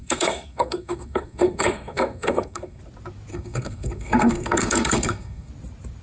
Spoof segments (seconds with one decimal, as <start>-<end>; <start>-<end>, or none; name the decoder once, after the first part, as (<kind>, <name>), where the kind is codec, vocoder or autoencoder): 0.0-2.8 (codec, SNAC); 3.3-5.5